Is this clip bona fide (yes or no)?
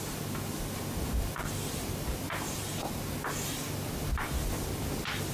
yes